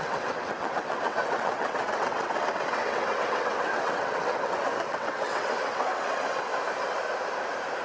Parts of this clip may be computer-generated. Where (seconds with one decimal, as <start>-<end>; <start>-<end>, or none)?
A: 0.0-6.5

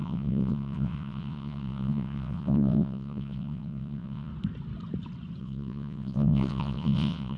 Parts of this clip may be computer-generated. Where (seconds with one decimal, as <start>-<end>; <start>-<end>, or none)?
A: 0.0-4.3; 5.4-7.4

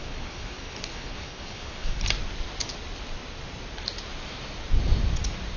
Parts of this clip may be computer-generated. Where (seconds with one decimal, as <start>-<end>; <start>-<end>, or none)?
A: 0.0-2.0

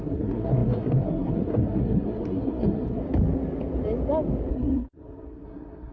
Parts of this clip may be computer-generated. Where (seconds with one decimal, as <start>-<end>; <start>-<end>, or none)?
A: 0.0-3.0; 4.5-5.9

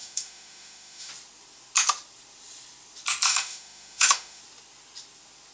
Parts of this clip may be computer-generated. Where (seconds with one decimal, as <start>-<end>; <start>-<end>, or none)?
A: 0.0-1.1; 3.3-4.4